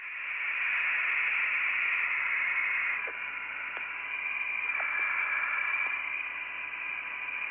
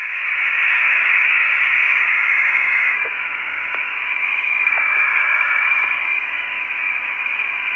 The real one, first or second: first